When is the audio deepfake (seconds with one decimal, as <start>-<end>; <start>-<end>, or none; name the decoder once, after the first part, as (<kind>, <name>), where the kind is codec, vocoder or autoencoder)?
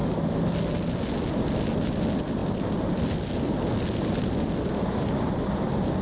none